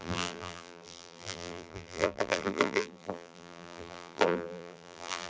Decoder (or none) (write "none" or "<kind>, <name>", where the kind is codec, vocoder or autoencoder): vocoder, BigVGAN v2